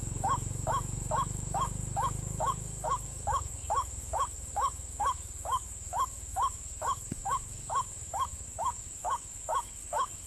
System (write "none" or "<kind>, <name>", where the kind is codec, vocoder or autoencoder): codec, DAC